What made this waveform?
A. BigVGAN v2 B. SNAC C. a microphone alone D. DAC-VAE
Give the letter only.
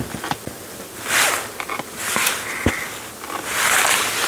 C